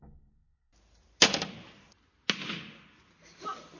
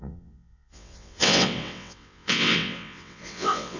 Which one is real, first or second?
first